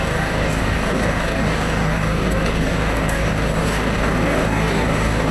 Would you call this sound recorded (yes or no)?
no